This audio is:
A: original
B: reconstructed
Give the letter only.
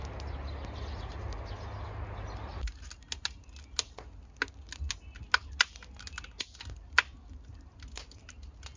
A